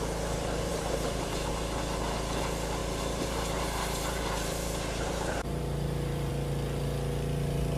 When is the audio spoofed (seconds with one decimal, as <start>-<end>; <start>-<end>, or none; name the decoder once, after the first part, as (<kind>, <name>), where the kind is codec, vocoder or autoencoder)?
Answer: 0.7-1.5 (vocoder, BigVGAN v2); 2.8-6.3